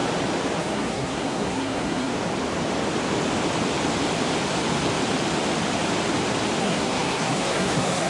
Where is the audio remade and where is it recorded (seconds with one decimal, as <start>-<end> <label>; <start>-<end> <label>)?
0.0-0.6 recorded; 0.6-2.1 remade; 2.1-6.6 recorded; 6.6-8.1 remade